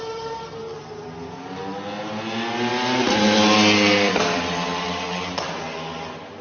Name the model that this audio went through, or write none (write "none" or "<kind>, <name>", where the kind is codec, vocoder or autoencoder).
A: none